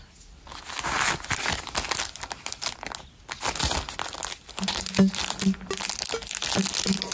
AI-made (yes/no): no